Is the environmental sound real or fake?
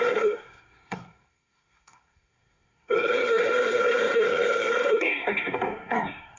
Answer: fake